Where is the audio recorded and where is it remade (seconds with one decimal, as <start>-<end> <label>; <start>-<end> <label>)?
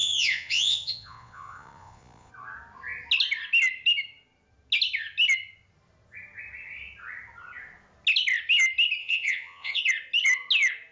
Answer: 0.0-2.3 remade; 2.3-9.0 recorded; 9.0-9.8 remade; 9.8-10.9 recorded